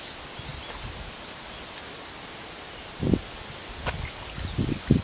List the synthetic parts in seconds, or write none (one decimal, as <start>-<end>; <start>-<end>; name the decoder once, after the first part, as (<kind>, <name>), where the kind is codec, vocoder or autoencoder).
none